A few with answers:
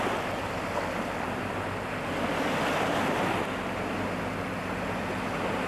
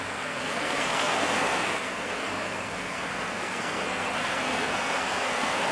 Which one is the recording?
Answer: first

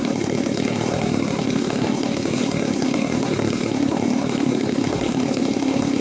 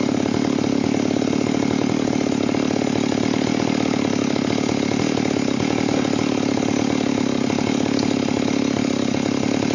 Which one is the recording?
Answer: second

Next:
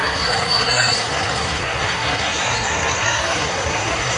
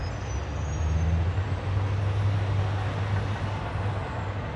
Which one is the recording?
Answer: second